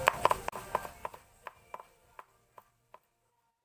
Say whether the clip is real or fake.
real